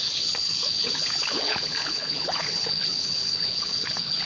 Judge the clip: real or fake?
fake